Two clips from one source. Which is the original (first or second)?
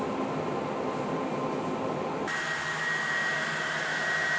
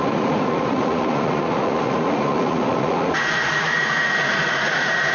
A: first